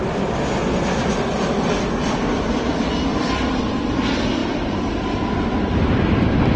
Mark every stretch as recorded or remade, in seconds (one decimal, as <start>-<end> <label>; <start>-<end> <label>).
0.0-6.6 recorded